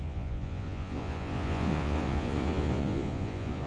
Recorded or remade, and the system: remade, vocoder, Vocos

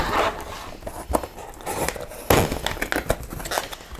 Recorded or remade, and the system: recorded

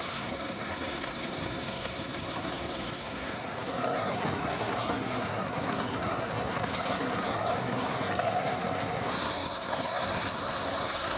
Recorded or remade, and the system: remade, codec, SNAC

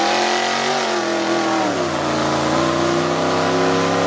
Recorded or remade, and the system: recorded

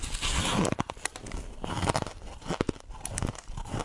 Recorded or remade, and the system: recorded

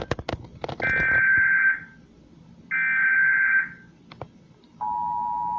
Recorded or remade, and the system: recorded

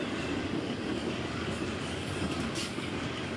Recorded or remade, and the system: remade, codec, DAC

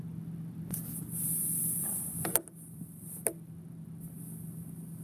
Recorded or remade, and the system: recorded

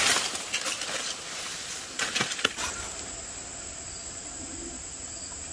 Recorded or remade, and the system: recorded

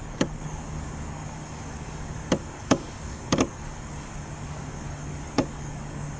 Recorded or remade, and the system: remade, codec, DAC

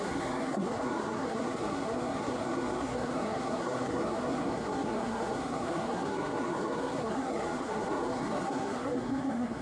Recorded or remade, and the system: remade, codec, SNAC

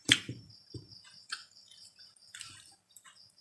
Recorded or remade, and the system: remade, vocoder, BigVGAN v2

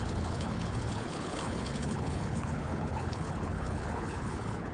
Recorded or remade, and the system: remade, codec, HILCodec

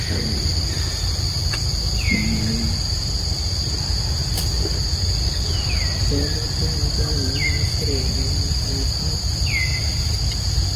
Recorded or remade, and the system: recorded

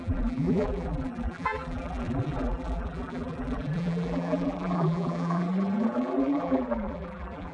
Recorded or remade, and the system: remade, vocoder, BigVGAN v2